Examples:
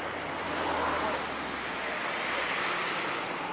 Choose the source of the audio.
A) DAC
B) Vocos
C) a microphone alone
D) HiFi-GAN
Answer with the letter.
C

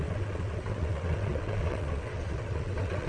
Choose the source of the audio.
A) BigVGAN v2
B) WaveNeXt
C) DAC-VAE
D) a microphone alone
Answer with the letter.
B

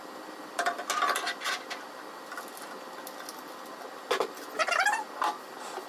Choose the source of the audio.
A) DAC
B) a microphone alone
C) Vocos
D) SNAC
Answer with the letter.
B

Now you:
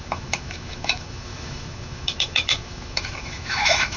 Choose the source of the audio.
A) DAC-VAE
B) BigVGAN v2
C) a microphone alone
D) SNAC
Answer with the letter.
A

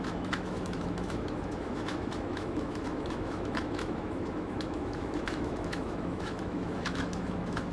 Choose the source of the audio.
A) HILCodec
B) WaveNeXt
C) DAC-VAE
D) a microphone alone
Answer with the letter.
C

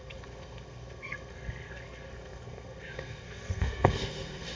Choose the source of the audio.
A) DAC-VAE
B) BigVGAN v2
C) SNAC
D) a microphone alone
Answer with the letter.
C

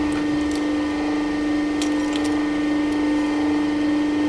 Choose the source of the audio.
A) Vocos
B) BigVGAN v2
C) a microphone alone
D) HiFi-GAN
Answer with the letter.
C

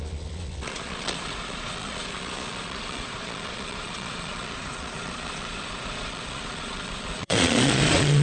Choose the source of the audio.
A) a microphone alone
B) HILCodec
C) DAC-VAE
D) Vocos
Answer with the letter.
D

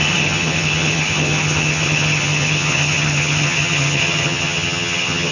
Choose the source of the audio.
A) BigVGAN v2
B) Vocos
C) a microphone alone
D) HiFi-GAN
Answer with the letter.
D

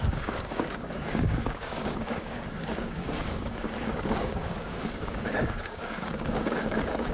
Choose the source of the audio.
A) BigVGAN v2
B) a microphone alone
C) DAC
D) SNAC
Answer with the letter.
C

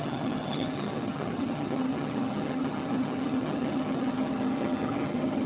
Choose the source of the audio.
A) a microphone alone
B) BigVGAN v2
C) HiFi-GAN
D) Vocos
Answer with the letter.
C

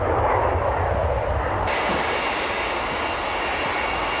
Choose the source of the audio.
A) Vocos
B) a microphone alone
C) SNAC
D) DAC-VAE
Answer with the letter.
B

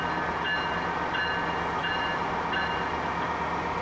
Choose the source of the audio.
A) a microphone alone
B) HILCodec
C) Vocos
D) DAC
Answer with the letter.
A